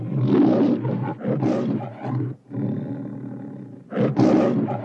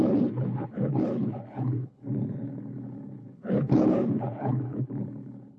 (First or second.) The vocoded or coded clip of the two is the second